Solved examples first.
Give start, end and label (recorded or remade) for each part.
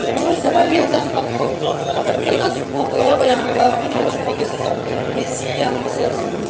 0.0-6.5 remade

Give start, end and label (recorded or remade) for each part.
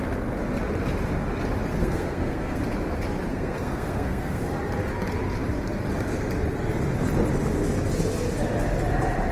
0.0-1.7 recorded; 1.7-2.6 remade; 2.6-3.3 recorded; 3.3-4.4 remade; 4.4-9.3 recorded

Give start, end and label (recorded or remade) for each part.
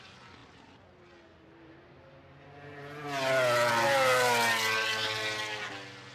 0.0-6.1 recorded